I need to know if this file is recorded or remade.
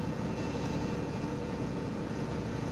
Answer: remade